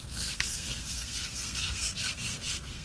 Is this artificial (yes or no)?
yes